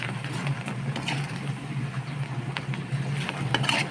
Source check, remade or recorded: recorded